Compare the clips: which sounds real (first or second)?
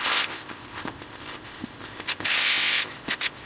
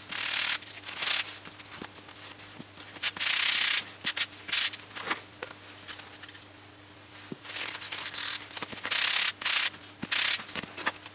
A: second